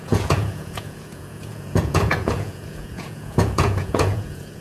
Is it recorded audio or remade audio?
remade